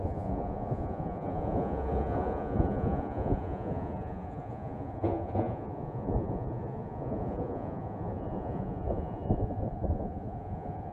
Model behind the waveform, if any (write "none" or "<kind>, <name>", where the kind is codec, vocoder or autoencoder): vocoder, Vocos